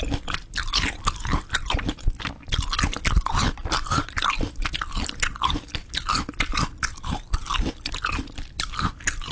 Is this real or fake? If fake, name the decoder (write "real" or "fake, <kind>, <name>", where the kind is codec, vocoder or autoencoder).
real